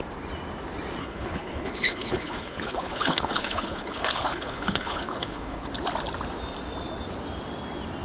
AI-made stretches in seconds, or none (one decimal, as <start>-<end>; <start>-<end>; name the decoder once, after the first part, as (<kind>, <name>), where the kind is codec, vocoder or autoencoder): 1.0-5.7 (codec, HILCodec)

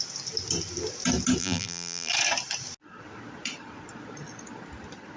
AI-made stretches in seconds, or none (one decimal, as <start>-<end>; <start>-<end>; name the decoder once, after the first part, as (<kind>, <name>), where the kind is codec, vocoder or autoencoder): 1.4-2.1 (vocoder, BigVGAN v2)